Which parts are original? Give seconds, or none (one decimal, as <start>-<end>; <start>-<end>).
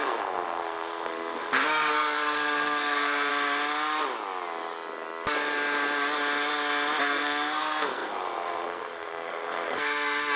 3.3-7.0